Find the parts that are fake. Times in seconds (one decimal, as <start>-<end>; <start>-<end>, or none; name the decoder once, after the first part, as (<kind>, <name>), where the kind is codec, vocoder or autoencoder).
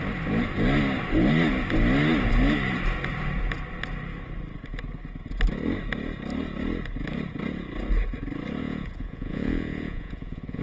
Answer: 8.6-10.6 (vocoder, Vocos)